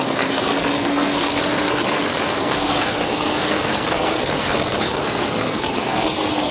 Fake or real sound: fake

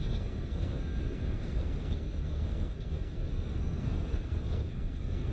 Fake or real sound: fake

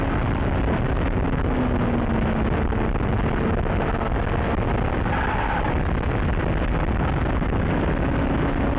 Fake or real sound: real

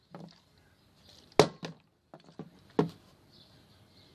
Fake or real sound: real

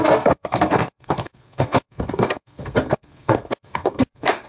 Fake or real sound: fake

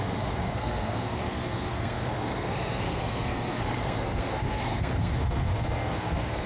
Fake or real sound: fake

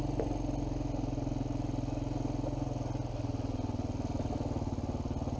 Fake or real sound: real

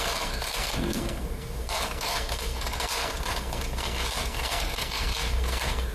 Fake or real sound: fake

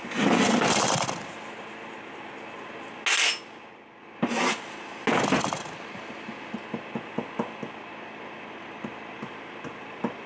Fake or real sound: real